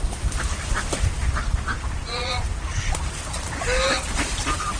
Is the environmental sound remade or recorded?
remade